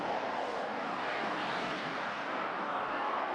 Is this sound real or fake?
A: fake